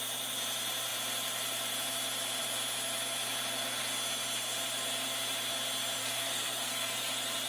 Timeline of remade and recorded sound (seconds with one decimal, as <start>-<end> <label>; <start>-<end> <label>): 0.0-6.0 recorded; 6.0-7.1 remade; 7.1-7.5 recorded